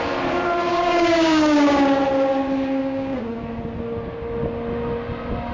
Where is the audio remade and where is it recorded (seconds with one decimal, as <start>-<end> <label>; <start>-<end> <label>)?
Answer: 0.0-0.7 recorded; 0.7-2.0 remade; 2.0-2.8 recorded; 2.8-3.4 remade; 3.4-5.5 recorded